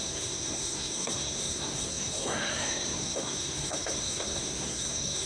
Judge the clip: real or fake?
fake